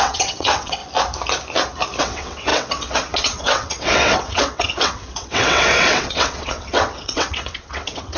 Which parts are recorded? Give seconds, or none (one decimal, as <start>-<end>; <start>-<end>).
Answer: 0.8-2.0